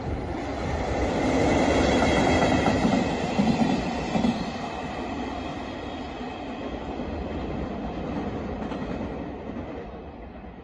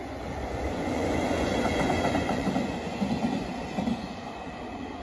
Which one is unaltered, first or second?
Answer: first